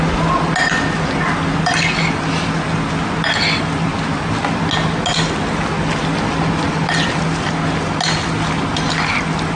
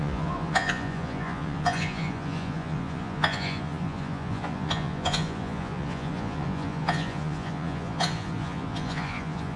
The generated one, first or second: second